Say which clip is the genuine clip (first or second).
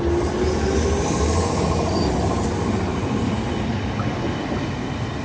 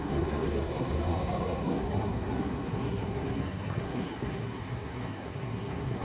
first